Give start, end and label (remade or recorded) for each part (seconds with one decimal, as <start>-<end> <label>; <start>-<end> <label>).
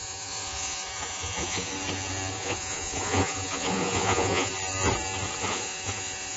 0.0-1.7 remade; 1.7-2.3 recorded; 2.3-4.5 remade; 4.5-5.4 recorded; 5.4-6.4 remade